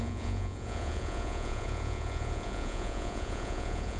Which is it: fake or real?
fake